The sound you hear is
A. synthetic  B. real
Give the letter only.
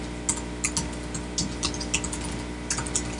B